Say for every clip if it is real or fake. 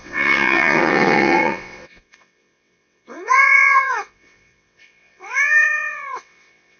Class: fake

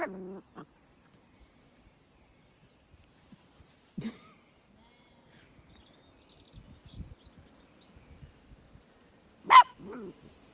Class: real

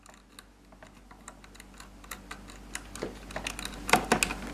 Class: real